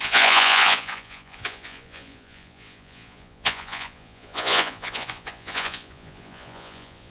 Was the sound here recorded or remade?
remade